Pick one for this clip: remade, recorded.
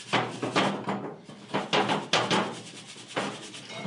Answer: recorded